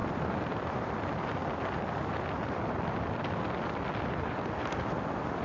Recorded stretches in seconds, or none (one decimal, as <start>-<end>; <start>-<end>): 0.0-5.4